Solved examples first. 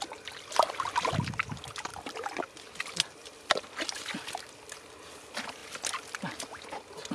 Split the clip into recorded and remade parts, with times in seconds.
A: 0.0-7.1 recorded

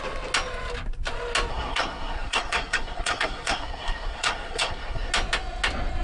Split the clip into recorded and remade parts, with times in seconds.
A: 0.0-1.5 recorded; 1.5-5.1 remade; 5.1-6.0 recorded

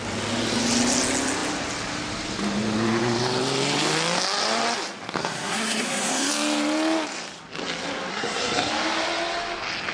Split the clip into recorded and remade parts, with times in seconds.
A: 0.0-5.2 recorded; 5.2-6.3 remade; 6.3-8.1 recorded; 8.1-8.7 remade; 8.7-9.9 recorded

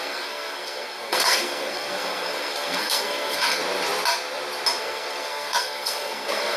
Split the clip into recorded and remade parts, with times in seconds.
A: 0.0-3.6 remade; 3.6-4.8 recorded; 4.8-6.6 remade

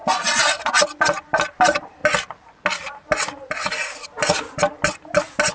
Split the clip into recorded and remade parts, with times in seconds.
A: 0.0-5.5 recorded

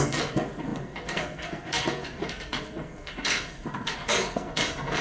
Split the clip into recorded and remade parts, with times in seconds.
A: 0.0-5.0 remade